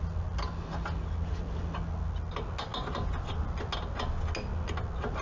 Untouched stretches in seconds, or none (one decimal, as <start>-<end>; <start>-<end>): 0.0-5.2

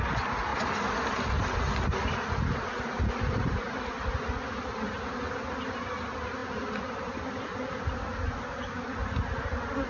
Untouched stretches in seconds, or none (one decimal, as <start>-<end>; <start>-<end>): 0.0-9.9